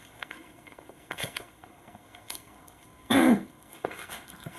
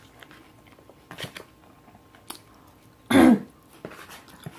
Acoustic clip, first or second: second